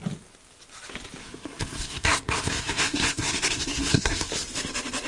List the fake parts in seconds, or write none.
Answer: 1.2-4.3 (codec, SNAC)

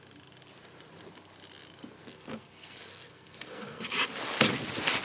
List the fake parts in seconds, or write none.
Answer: 2.0-3.9 (codec, SNAC)